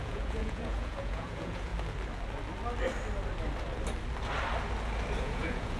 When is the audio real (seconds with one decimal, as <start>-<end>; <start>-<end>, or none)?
1.7-5.2